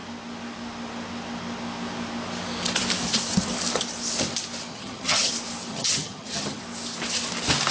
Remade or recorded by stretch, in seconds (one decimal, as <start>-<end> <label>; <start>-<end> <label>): 0.0-4.7 recorded; 4.7-5.3 remade; 5.3-5.7 recorded; 5.7-6.6 remade; 6.6-7.7 recorded